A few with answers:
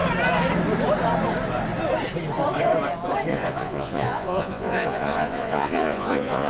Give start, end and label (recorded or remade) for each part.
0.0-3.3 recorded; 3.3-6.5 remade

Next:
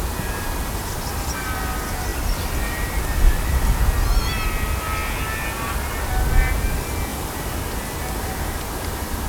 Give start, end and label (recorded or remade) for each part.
0.0-2.1 recorded; 2.1-3.7 remade; 3.7-7.1 recorded; 7.1-9.3 remade

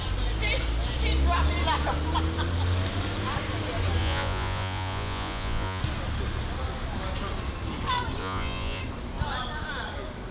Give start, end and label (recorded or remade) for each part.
0.0-4.0 recorded; 4.0-5.8 remade; 5.8-8.2 recorded; 8.2-8.8 remade; 8.8-10.3 recorded

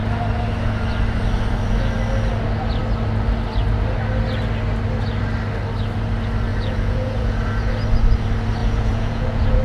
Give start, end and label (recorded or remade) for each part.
0.0-6.5 recorded; 6.5-7.7 remade; 7.7-8.6 recorded; 8.6-9.6 remade